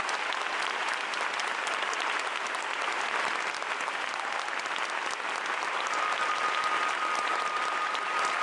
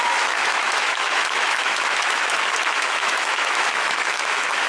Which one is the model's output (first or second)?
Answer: second